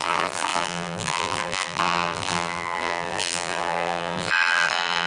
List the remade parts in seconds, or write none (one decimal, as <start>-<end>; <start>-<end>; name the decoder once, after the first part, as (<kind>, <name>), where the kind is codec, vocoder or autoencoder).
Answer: 0.0-5.1 (vocoder, BigVGAN v2)